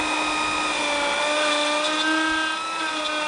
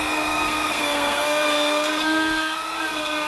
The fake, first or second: second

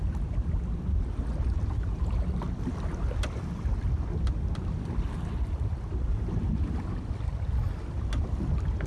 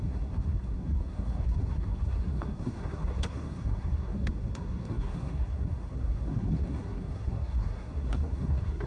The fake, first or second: second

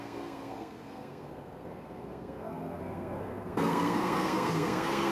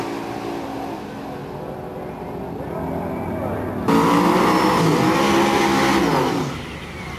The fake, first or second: first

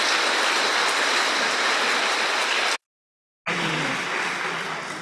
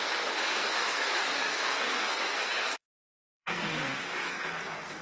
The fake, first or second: second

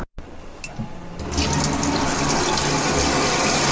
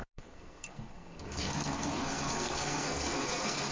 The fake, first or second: second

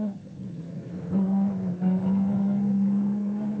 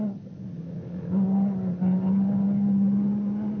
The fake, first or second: first